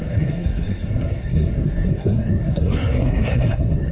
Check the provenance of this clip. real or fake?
fake